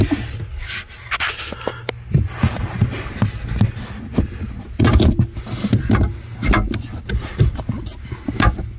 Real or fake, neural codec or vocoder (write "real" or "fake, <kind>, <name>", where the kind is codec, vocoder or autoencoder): real